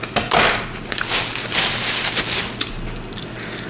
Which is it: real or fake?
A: real